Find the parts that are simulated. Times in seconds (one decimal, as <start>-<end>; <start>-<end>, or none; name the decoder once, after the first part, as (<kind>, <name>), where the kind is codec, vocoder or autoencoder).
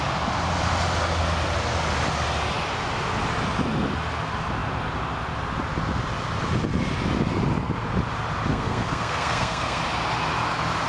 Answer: 8.5-9.8 (codec, SNAC)